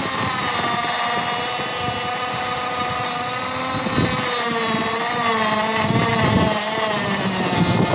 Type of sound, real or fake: real